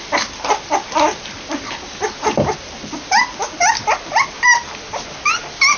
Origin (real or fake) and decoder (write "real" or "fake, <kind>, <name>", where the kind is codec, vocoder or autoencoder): real